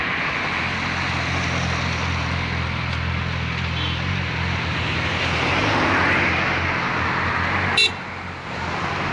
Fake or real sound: real